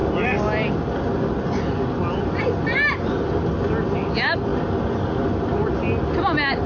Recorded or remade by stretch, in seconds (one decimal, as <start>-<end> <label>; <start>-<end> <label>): 0.0-6.7 recorded